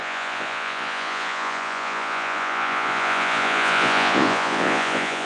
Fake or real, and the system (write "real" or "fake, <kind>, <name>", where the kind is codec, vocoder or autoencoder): fake, vocoder, Vocos